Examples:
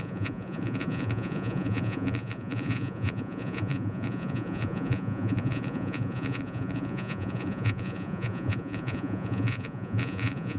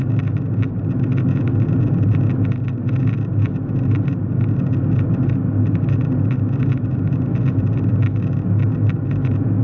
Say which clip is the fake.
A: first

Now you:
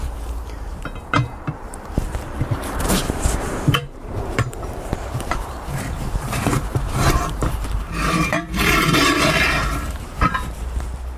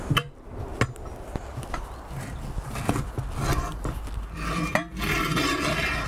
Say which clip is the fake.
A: first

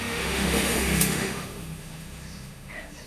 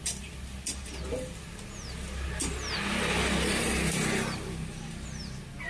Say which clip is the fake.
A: first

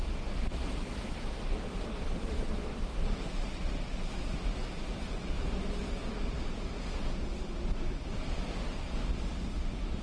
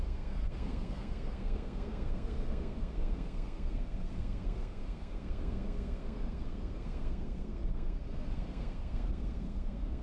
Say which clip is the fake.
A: second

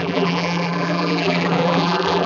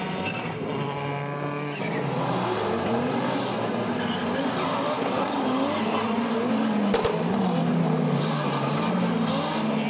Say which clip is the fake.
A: first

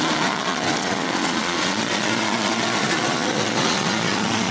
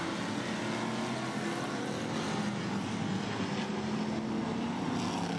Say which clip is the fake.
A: first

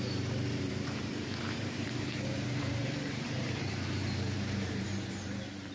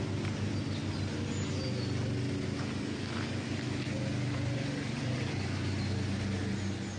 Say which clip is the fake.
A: first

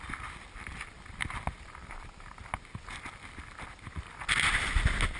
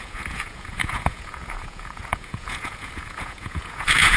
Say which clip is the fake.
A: second